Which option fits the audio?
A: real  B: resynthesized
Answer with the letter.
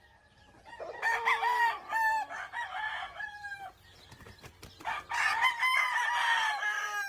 A